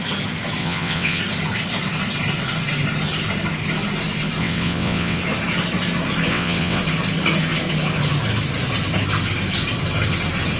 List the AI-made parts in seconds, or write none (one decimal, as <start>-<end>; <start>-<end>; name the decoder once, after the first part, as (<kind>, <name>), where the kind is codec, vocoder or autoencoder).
0.6-1.2 (vocoder, WaveNeXt); 4.4-5.2; 6.3-6.8